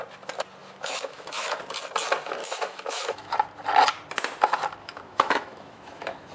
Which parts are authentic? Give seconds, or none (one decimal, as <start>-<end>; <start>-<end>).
0.0-0.6; 1.6-2.4; 3.3-4.8